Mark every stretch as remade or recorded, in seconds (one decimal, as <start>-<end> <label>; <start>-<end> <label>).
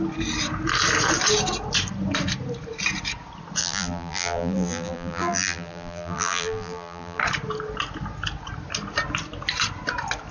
0.0-3.6 recorded; 3.6-7.2 remade; 7.2-10.3 recorded